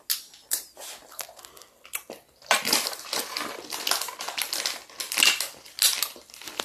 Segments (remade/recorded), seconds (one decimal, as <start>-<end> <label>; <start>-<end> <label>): 0.0-0.4 recorded; 0.4-1.4 remade; 1.4-6.6 recorded